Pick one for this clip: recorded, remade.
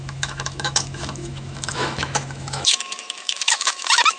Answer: remade